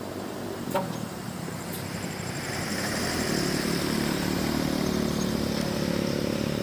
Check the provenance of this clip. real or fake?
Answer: fake